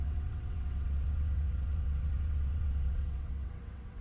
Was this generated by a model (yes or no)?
yes